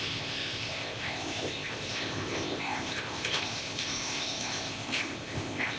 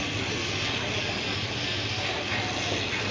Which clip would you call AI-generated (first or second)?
first